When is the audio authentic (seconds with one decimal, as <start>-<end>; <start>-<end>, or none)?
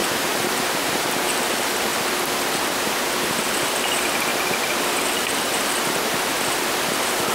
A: 1.5-7.3